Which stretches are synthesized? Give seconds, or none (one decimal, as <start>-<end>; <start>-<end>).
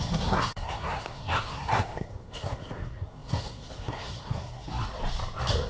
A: 0.0-4.7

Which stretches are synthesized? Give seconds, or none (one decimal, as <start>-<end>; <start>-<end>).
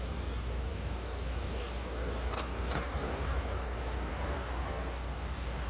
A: 0.0-5.7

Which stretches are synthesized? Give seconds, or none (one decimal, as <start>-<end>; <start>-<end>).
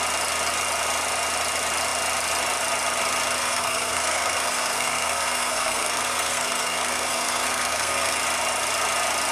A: 3.4-8.2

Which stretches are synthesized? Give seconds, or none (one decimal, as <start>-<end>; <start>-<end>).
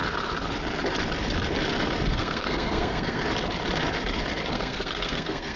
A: 2.1-3.2; 4.5-5.6